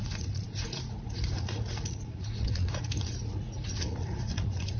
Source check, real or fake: fake